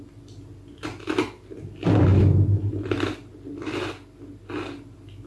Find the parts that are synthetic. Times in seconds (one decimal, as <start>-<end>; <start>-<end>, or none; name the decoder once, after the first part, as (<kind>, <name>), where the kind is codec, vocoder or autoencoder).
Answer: none